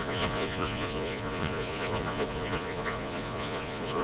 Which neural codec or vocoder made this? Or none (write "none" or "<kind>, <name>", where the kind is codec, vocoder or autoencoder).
vocoder, Vocos